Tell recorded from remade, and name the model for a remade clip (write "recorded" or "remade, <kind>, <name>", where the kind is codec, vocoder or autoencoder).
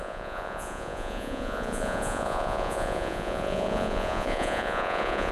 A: remade, vocoder, Vocos